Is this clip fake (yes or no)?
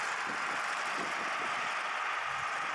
no